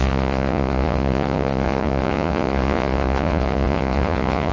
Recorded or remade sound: remade